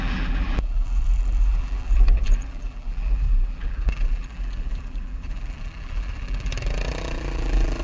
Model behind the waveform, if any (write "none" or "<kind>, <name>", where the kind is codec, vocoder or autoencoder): vocoder, BigVGAN v2